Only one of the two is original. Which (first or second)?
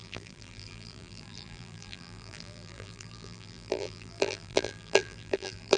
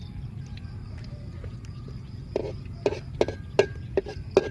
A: second